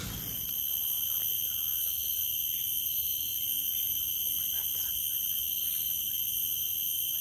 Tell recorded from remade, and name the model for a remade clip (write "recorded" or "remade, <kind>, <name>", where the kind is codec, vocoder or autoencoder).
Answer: recorded